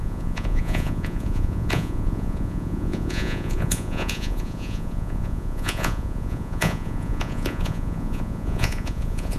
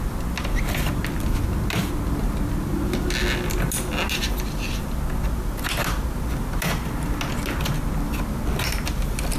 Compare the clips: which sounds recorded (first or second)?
second